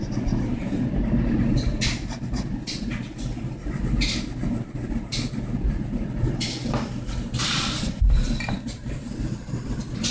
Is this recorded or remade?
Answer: recorded